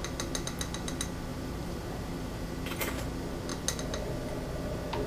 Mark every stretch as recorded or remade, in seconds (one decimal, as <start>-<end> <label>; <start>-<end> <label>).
0.0-1.3 recorded; 1.3-2.9 remade; 2.9-5.1 recorded